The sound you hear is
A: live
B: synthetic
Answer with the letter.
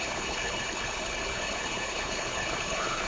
B